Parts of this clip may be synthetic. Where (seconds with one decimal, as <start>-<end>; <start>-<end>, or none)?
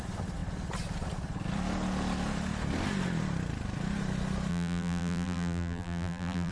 4.5-6.5